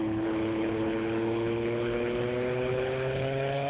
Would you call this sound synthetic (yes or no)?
yes